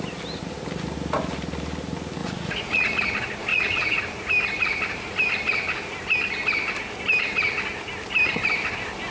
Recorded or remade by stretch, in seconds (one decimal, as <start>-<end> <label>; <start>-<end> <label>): 0.0-2.2 recorded; 2.2-3.1 remade; 3.1-3.5 recorded; 3.5-4.0 remade; 4.0-9.1 recorded